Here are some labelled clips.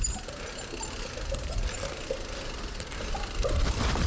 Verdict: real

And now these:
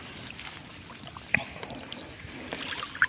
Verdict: real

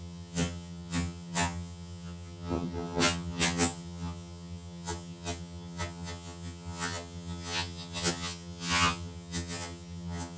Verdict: fake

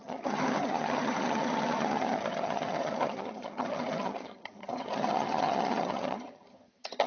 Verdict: fake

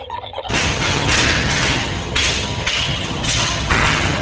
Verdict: fake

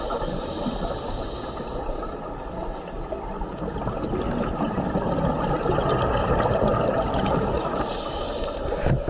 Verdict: real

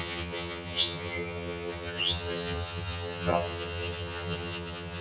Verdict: fake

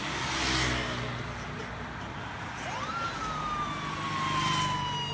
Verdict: real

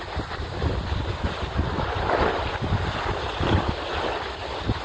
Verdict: real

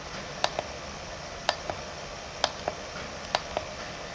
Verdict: real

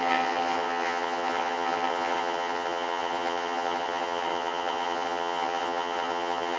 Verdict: fake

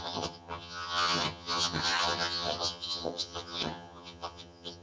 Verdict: fake